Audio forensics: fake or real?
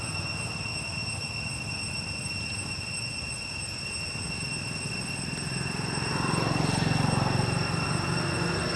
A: real